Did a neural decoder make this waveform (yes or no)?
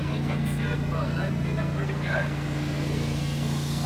yes